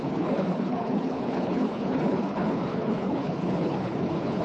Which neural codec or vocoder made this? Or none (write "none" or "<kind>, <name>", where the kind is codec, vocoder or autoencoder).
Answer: codec, HILCodec